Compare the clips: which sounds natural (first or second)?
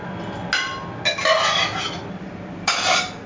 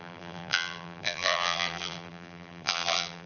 first